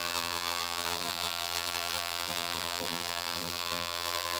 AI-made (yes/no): yes